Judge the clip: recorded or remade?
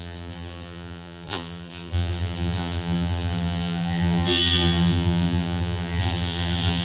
remade